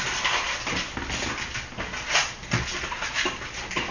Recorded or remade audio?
recorded